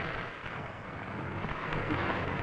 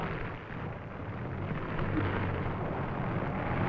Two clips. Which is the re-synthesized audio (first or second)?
first